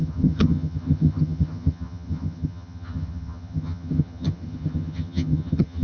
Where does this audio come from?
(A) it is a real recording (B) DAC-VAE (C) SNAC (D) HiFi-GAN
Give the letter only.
D